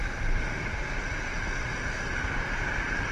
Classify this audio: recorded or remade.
recorded